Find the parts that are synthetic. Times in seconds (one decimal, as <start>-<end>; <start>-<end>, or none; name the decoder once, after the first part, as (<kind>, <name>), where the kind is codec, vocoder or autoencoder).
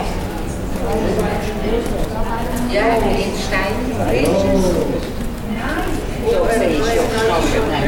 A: none